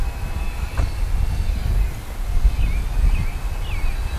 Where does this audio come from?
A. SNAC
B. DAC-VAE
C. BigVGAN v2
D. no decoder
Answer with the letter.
D